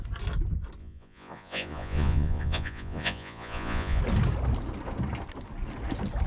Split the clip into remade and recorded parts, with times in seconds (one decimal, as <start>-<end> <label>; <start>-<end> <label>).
0.0-0.8 recorded; 0.8-4.0 remade; 4.0-6.3 recorded